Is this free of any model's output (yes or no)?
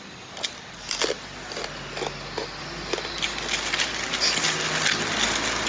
yes